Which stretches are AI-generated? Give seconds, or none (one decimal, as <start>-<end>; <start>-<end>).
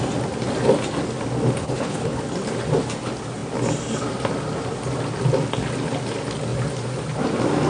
1.6-2.2